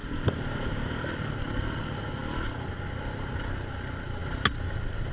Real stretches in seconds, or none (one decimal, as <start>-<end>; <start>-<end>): 1.1-5.1